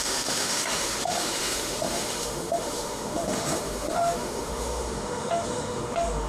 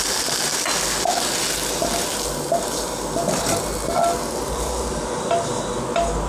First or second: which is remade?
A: first